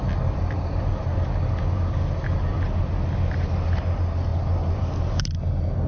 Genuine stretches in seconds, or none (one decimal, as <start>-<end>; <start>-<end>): 0.0-5.9